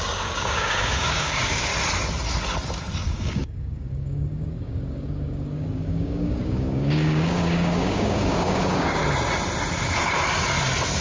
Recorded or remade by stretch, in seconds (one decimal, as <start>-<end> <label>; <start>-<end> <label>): 0.0-1.7 remade; 1.7-3.0 recorded; 3.0-9.0 remade; 9.0-11.0 recorded